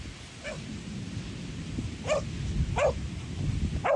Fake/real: real